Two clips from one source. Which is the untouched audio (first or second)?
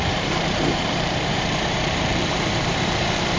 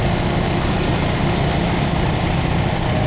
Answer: second